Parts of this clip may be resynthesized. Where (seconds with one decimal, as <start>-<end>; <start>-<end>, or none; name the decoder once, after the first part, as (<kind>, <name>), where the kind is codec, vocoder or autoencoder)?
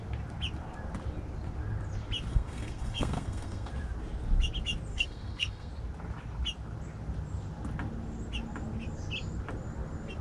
2.3-3.7 (codec, SNAC); 4.9-5.7